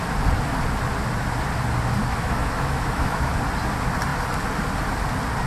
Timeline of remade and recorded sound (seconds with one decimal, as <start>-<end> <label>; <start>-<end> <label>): 0.0-2.0 recorded; 2.0-3.3 remade; 3.3-5.5 recorded